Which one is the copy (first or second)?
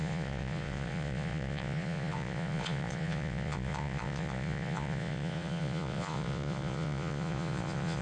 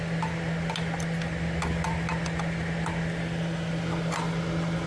first